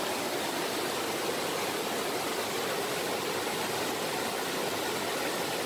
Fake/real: real